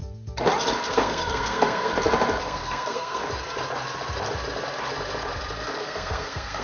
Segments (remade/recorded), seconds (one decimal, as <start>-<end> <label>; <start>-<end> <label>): 0.0-0.9 recorded; 0.9-1.9 remade; 1.9-2.4 recorded; 2.4-3.2 remade; 3.2-5.8 recorded; 5.8-6.6 remade